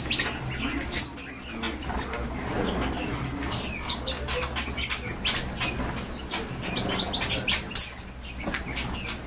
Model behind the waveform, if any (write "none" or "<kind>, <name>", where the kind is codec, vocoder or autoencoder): none